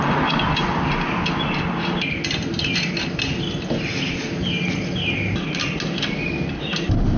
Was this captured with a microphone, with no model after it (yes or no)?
yes